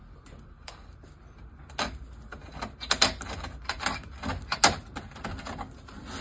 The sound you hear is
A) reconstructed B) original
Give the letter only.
B